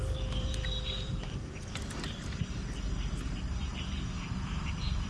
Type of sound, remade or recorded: remade